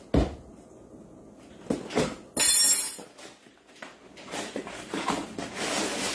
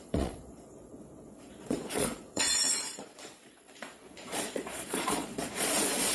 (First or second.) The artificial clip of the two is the second